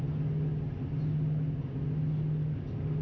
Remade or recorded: recorded